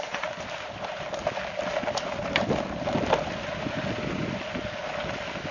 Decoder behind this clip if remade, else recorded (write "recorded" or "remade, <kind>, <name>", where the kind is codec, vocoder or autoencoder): recorded